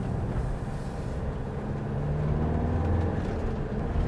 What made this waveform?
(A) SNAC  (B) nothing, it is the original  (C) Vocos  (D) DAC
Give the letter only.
B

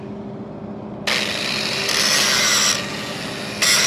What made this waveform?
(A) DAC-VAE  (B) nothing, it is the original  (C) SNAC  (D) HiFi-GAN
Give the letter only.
B